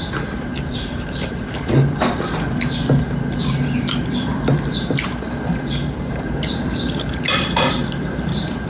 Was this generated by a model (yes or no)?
yes